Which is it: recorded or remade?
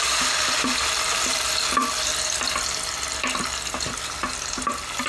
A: recorded